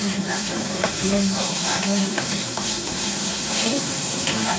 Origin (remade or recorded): remade